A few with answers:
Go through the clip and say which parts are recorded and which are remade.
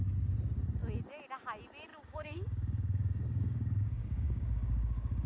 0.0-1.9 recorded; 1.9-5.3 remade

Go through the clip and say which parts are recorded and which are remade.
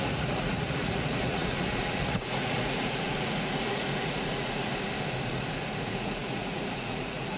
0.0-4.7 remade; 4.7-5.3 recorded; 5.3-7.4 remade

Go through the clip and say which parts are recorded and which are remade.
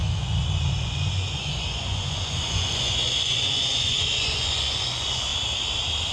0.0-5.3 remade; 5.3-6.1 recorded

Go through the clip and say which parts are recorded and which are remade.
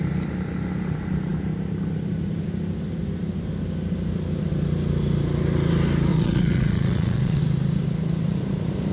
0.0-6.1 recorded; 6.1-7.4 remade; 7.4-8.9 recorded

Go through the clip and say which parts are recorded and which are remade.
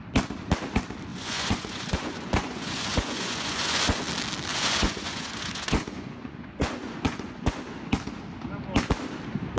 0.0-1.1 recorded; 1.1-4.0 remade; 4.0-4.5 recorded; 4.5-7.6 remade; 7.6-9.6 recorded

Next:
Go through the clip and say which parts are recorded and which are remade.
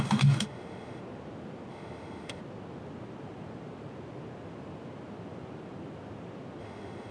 0.0-1.0 remade; 1.0-1.7 recorded; 1.7-2.4 remade; 2.4-6.6 recorded; 6.6-7.1 remade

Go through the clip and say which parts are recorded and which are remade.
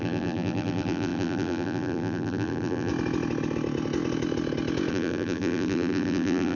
0.0-2.9 remade; 2.9-4.9 recorded; 4.9-6.5 remade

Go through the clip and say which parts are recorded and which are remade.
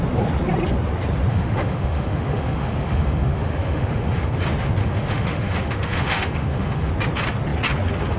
0.0-1.3 recorded; 1.3-4.3 remade; 4.3-4.8 recorded; 4.8-6.9 remade; 6.9-8.2 recorded